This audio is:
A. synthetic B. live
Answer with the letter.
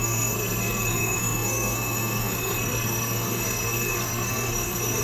A